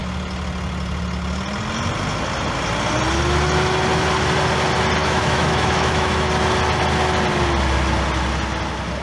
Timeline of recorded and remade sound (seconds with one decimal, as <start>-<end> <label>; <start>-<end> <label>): 0.0-5.0 recorded; 5.0-6.3 remade; 6.3-9.0 recorded

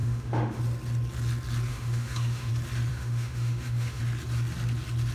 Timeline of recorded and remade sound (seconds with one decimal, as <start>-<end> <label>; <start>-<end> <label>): 0.0-0.6 remade; 0.6-1.7 recorded; 1.7-2.5 remade; 2.5-2.9 recorded; 2.9-4.0 remade; 4.0-5.1 recorded

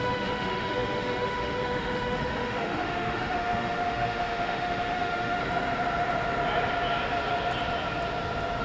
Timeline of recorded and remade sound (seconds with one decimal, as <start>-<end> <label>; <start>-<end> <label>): 0.0-5.4 remade; 5.4-8.6 recorded

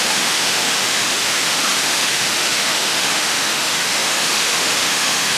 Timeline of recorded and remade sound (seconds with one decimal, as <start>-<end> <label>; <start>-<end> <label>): 0.0-5.4 remade

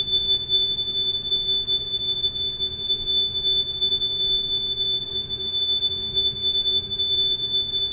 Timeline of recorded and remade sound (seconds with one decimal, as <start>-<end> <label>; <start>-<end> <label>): 0.0-2.6 recorded; 2.6-3.4 remade; 3.4-5.1 recorded; 5.1-7.1 remade; 7.1-7.9 recorded

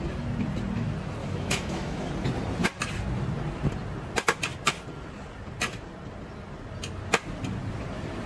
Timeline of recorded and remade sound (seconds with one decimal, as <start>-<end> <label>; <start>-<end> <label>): 0.0-1.2 recorded; 1.2-2.1 remade; 2.1-8.3 recorded